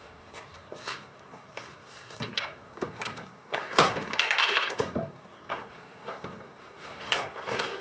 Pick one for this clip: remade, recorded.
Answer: remade